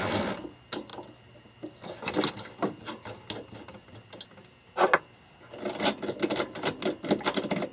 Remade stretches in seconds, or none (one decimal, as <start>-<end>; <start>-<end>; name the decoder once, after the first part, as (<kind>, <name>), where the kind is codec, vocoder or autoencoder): none